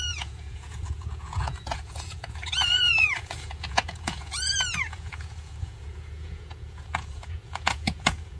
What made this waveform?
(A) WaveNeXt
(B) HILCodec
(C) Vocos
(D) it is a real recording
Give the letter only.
C